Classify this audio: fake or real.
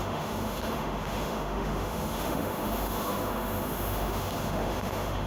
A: fake